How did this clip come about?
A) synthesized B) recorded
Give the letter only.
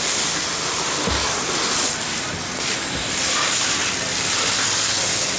B